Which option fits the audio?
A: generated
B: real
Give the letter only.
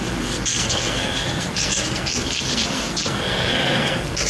A